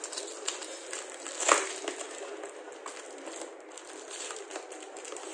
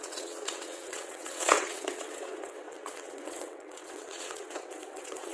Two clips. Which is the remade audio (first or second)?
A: second